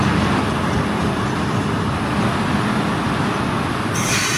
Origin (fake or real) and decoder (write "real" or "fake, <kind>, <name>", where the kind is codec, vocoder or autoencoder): real